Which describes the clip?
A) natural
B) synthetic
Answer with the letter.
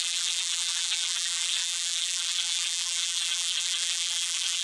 B